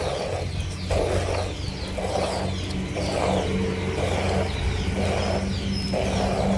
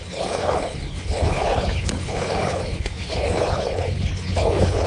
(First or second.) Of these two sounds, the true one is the first